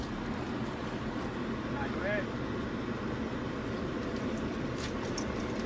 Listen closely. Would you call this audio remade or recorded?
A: recorded